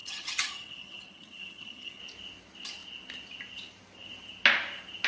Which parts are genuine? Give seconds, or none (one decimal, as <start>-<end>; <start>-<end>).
2.0-5.1